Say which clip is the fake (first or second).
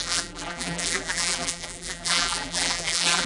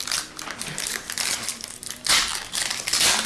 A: first